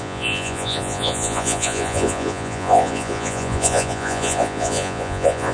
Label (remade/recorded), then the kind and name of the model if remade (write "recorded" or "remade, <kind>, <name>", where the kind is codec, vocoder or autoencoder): remade, vocoder, Vocos